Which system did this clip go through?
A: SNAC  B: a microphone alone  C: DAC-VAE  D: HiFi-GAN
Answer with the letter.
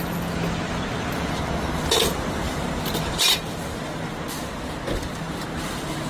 B